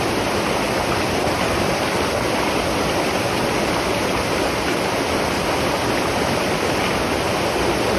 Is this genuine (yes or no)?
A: yes